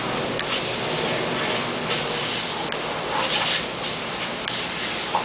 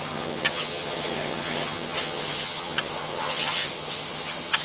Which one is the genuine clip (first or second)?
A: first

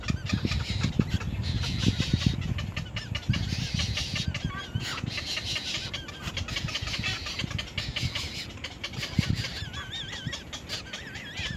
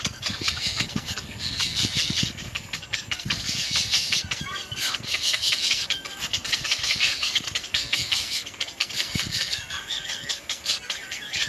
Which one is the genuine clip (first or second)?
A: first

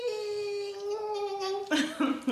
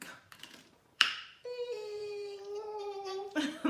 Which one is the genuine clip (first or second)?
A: first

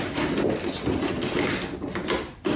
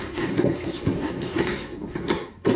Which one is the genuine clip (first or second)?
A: first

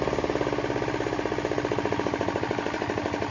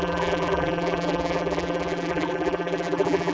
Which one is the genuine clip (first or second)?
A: first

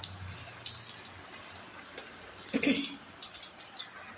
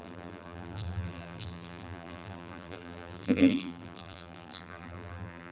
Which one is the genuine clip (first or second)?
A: first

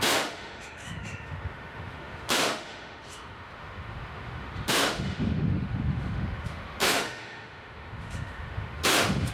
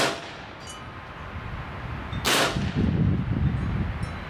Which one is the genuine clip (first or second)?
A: second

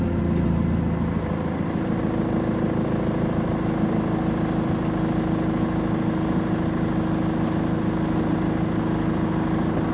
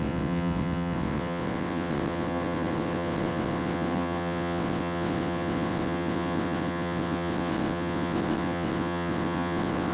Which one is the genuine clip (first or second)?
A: first